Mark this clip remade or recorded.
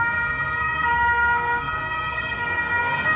remade